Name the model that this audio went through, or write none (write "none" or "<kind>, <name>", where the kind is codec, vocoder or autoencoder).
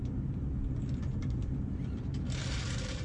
none